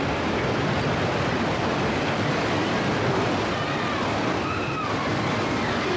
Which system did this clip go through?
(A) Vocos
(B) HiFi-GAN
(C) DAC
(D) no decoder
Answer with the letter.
D